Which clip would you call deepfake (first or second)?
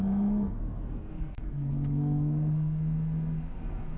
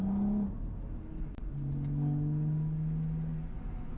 first